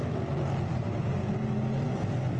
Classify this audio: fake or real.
real